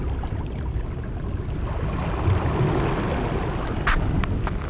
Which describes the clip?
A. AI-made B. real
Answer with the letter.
B